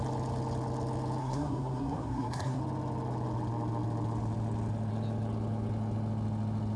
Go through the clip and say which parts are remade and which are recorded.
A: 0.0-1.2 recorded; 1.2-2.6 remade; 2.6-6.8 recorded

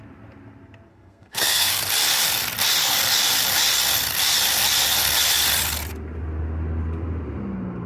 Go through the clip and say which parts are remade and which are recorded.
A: 0.0-0.9 recorded; 0.9-1.8 remade; 1.8-7.9 recorded

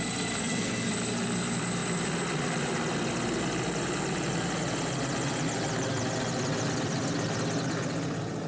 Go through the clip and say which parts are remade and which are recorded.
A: 0.0-0.4 recorded; 0.4-0.9 remade; 0.9-8.5 recorded

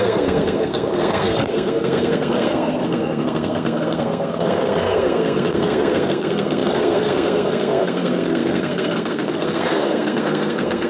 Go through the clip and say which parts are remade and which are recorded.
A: 0.0-10.9 remade

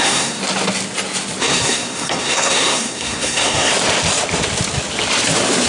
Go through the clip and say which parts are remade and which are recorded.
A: 0.0-0.4 remade; 0.4-1.4 recorded; 1.4-3.7 remade; 3.7-5.7 recorded

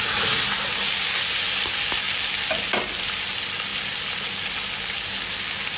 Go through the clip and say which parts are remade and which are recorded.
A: 0.0-5.8 recorded